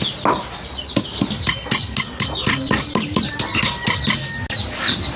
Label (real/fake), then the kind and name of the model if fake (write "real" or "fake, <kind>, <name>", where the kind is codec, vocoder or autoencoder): real